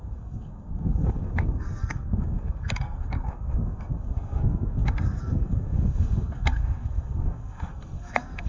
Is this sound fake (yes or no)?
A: yes